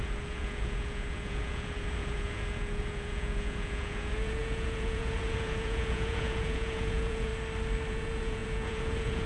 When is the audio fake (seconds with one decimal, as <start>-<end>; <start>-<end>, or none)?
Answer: 0.0-7.3; 7.9-9.3